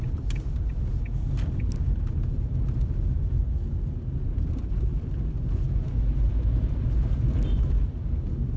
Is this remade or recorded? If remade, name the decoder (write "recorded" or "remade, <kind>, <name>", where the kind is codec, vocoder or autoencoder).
recorded